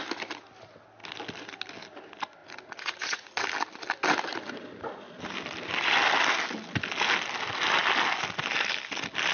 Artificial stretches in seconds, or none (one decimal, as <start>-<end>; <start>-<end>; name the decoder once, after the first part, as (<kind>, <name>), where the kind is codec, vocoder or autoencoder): 2.4-3.3 (vocoder, Vocos)